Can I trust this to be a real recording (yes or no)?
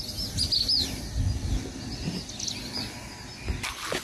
yes